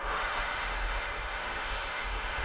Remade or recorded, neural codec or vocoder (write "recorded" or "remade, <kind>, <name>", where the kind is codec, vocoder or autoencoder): remade, autoencoder, DAC-VAE